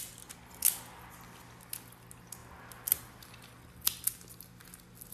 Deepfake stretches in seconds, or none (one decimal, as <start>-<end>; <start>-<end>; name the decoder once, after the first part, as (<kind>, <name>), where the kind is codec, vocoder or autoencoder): none